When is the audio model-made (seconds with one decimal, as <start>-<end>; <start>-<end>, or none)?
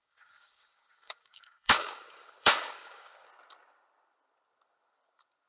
0.0-3.3